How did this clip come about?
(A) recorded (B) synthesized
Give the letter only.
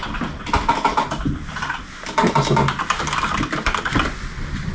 A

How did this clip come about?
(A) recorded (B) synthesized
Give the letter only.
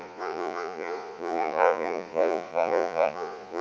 B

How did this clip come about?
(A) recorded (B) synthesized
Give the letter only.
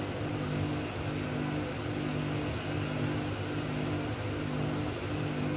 A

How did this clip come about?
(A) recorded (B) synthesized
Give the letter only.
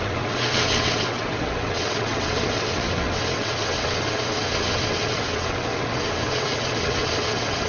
B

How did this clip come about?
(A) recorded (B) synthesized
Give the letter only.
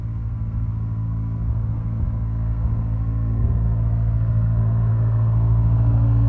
B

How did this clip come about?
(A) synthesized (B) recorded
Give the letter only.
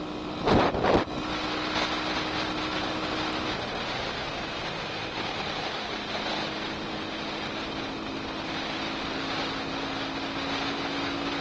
B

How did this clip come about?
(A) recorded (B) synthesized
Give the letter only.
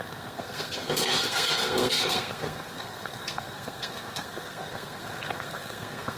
B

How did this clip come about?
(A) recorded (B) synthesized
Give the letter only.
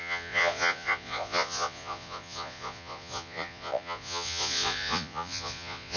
B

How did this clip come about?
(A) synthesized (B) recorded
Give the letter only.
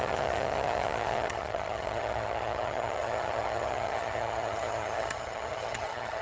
A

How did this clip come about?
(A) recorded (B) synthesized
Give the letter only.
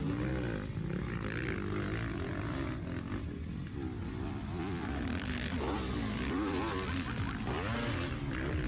A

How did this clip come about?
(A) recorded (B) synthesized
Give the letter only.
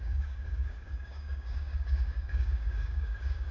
B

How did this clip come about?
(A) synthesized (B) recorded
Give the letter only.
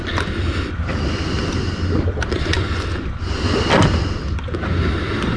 B